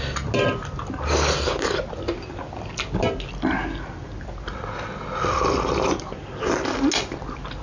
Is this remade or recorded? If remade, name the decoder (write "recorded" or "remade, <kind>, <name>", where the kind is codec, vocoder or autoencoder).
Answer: recorded